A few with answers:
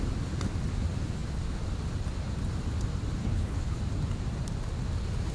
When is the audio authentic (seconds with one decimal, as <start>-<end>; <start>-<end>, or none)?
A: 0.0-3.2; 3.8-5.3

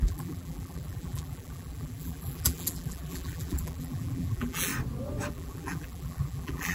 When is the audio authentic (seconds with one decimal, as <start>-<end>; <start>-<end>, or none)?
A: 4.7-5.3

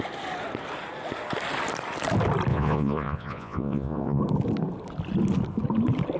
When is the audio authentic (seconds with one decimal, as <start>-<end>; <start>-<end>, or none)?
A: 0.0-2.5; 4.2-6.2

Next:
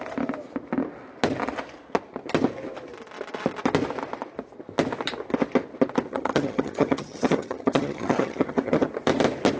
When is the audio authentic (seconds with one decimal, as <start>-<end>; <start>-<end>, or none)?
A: 0.0-6.1; 8.9-9.6

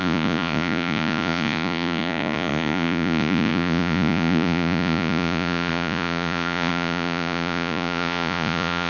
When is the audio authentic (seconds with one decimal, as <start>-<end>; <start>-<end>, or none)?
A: none